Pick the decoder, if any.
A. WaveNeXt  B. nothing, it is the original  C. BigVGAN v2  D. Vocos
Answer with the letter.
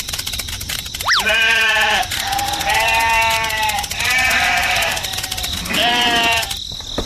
C